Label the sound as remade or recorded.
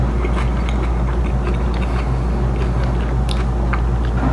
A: recorded